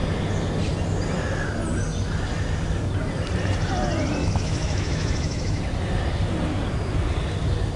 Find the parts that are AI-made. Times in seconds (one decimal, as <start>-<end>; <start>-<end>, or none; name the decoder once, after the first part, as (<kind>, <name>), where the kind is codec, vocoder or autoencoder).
4.2-5.6 (autoencoder, DAC-VAE)